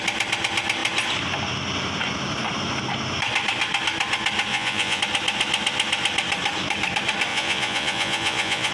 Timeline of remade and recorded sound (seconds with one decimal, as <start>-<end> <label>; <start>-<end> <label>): 0.0-4.5 recorded; 4.5-5.0 remade; 5.0-7.3 recorded; 7.3-8.7 remade

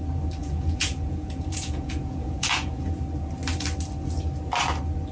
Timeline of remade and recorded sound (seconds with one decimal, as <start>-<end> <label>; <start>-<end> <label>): 0.0-0.4 recorded; 0.4-2.9 remade; 2.9-5.1 recorded

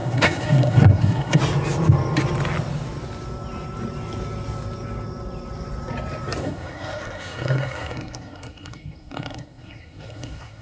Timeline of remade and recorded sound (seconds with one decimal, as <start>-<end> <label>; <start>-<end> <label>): 0.0-1.4 remade; 1.4-6.4 recorded; 6.4-10.6 remade